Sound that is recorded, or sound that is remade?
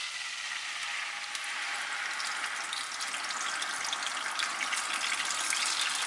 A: recorded